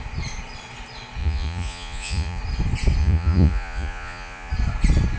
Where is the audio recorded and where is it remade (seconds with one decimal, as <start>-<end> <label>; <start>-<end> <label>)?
0.0-1.2 recorded; 1.2-2.4 remade; 2.4-3.0 recorded; 3.0-4.5 remade; 4.5-5.2 recorded